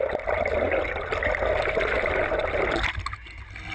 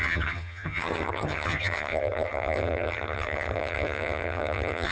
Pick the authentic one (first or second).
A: first